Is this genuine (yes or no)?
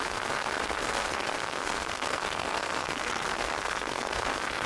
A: no